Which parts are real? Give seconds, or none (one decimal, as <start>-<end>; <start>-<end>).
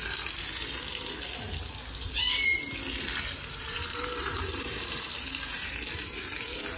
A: 0.0-3.9